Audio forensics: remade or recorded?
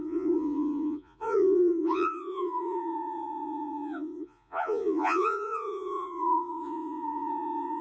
remade